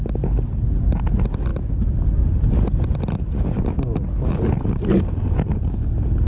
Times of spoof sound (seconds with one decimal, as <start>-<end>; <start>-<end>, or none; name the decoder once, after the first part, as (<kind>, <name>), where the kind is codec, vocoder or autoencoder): none